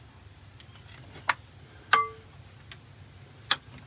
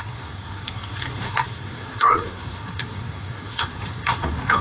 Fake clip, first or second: second